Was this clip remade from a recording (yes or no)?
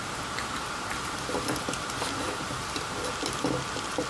no